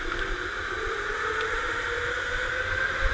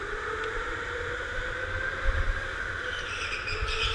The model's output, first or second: second